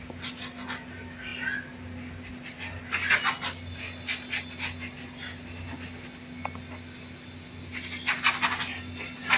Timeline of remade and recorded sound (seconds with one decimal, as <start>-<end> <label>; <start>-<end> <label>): 0.0-9.4 recorded